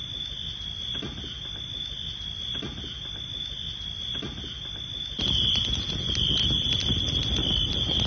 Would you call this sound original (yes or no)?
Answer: yes